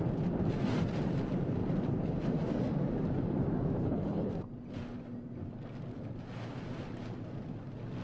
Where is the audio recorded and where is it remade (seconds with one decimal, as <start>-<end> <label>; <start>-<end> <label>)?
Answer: 0.0-3.8 recorded; 3.8-4.3 remade; 4.3-8.0 recorded